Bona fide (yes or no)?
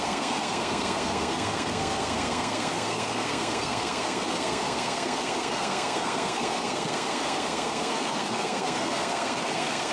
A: no